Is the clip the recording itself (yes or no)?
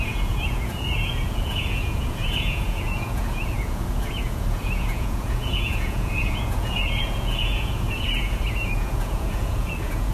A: no